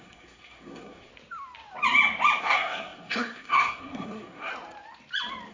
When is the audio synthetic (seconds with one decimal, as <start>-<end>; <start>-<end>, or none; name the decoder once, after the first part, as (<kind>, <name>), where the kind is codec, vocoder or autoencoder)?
0.0-1.1 (codec, SNAC); 2.4-4.5

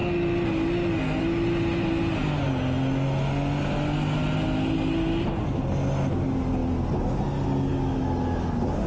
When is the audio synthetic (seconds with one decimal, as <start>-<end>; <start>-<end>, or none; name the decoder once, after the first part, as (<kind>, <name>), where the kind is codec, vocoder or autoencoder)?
7.7-8.5 (autoencoder, DAC-VAE)

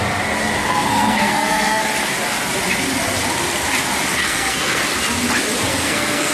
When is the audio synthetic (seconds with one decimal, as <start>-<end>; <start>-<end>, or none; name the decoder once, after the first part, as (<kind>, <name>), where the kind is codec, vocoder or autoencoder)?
0.6-1.8 (codec, SNAC); 4.2-4.8; 5.7-6.3

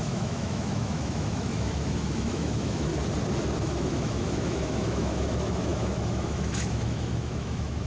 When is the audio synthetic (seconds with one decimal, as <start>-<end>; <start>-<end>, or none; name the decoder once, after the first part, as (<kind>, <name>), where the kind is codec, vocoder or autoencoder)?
0.0-2.9 (autoencoder, DAC-VAE); 3.6-7.9

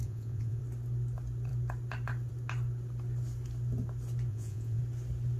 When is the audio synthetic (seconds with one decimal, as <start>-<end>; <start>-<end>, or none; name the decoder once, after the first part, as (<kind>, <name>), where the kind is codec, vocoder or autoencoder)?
0.0-0.6 (vocoder, Vocos); 4.3-4.8

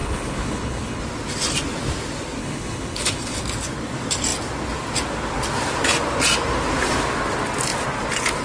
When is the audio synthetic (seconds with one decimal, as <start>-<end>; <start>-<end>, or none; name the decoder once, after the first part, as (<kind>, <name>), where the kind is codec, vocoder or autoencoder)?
0.0-1.0 (codec, HILCodec); 2.4-3.4

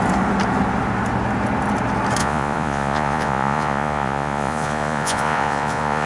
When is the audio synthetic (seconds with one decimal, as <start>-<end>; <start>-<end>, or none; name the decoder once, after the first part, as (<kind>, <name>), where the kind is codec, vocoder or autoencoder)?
2.2-6.1 (vocoder, Vocos)